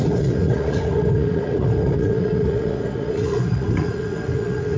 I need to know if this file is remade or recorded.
remade